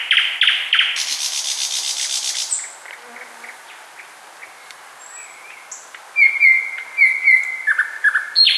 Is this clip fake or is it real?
real